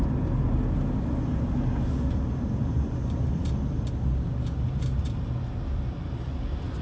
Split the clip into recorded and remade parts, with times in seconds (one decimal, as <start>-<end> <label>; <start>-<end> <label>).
0.0-2.6 recorded; 2.6-3.4 remade; 3.4-6.8 recorded